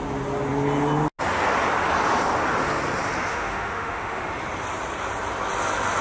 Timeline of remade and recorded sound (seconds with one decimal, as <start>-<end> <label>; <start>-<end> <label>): 0.0-3.3 recorded; 3.3-4.2 remade; 4.2-6.0 recorded

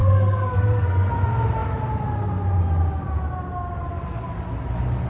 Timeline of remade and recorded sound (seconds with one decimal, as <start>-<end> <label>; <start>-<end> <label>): 0.0-1.1 remade; 1.1-5.1 recorded

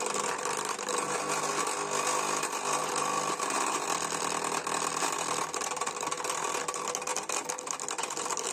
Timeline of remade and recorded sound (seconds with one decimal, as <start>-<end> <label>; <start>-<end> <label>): 0.0-2.8 recorded; 2.8-6.6 remade; 6.6-7.1 recorded; 7.1-7.7 remade; 7.7-8.5 recorded

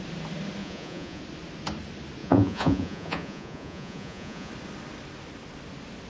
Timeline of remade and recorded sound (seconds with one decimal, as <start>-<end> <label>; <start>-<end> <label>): 0.0-0.6 recorded; 0.6-1.2 remade; 1.2-2.2 recorded; 2.2-4.5 remade; 4.5-6.1 recorded

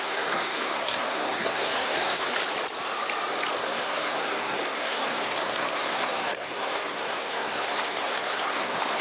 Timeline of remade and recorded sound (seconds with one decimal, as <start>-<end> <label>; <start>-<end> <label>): 0.0-2.3 remade; 2.3-3.6 recorded; 3.6-9.0 remade